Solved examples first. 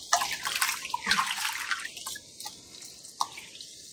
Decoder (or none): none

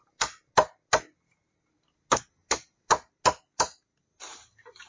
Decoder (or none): none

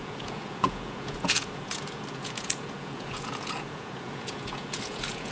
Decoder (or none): vocoder, Vocos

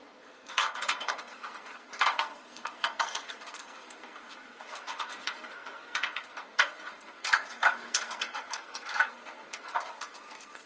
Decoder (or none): codec, SNAC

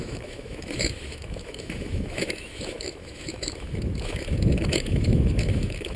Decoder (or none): autoencoder, DAC-VAE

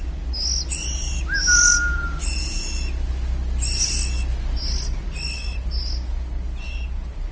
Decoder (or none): none